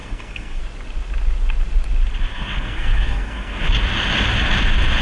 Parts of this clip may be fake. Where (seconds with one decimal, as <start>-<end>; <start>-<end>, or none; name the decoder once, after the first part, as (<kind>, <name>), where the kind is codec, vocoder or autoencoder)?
0.0-0.6 (codec, SNAC); 2.3-3.7